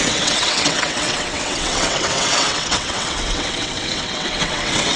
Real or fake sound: fake